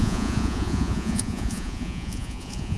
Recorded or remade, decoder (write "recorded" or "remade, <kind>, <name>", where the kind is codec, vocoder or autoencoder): remade, vocoder, Vocos